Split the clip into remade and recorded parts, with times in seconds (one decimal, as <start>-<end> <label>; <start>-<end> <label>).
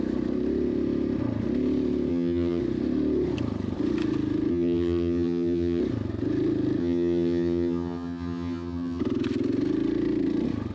0.0-2.1 recorded; 2.1-2.6 remade; 2.6-4.5 recorded; 4.5-5.8 remade; 5.8-6.8 recorded; 6.8-9.0 remade; 9.0-10.7 recorded